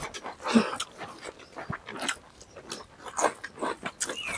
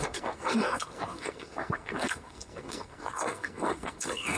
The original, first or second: first